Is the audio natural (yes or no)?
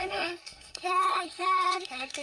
no